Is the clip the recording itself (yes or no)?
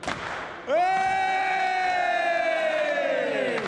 yes